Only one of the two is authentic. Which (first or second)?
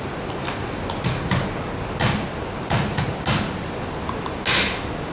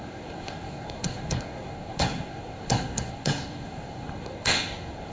first